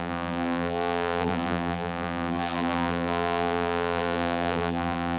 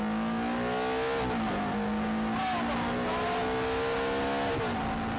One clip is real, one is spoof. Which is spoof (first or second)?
first